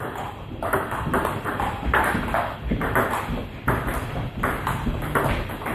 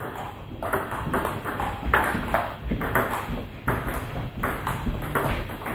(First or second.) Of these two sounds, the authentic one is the second